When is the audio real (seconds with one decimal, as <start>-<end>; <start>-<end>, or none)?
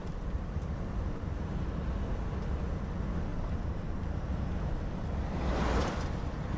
1.2-3.3; 5.4-6.6